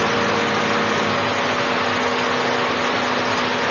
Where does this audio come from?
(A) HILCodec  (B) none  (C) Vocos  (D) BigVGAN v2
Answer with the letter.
B